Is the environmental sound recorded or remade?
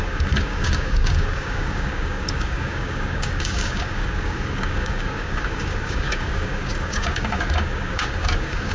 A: remade